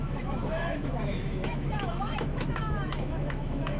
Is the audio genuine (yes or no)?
no